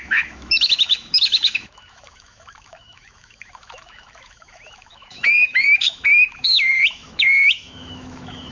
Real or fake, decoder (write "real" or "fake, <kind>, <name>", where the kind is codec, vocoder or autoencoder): fake, autoencoder, DAC-VAE